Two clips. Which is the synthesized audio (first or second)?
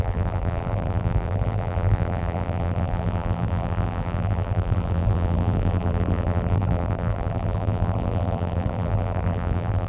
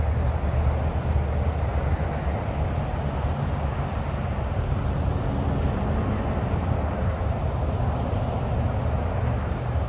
first